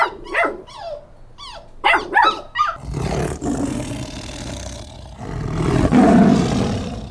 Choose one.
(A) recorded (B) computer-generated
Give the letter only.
A